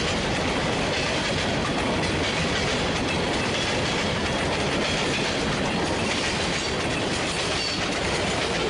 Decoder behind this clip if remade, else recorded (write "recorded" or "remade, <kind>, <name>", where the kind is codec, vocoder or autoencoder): remade, vocoder, BigVGAN v2